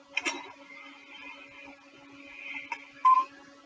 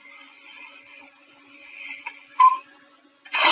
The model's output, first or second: second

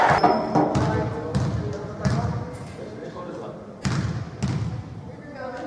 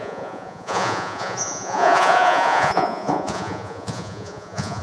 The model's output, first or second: second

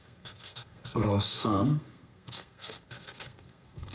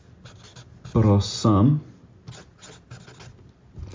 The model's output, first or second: first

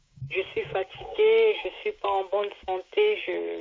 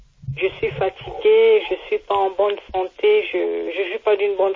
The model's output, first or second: first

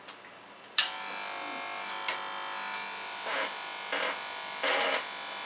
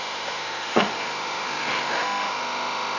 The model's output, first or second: second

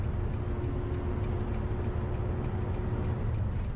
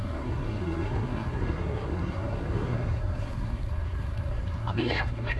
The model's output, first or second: second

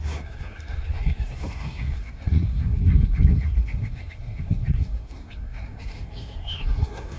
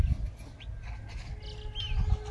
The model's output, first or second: first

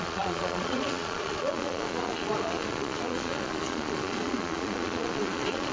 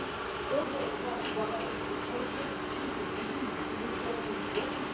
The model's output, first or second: first